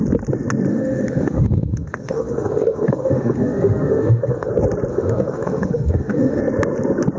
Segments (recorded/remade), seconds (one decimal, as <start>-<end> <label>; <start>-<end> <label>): 0.0-0.7 recorded; 0.7-4.5 remade; 4.5-4.9 recorded; 4.9-6.4 remade; 6.4-7.2 recorded